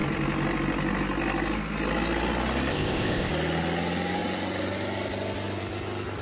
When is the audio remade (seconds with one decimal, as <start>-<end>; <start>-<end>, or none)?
2.7-3.3